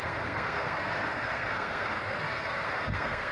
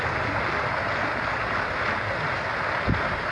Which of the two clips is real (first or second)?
second